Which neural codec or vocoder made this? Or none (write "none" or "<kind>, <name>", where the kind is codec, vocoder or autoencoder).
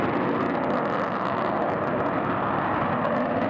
none